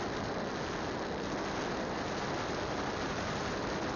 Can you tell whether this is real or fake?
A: real